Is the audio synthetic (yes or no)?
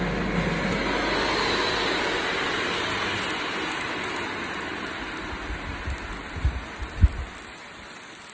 no